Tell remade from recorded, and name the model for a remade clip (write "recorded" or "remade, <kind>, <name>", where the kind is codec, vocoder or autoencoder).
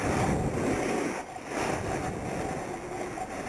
recorded